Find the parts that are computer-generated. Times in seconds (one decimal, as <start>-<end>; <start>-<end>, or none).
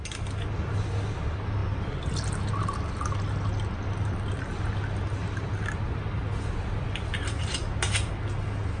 none